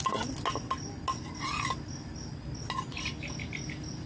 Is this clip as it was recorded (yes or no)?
yes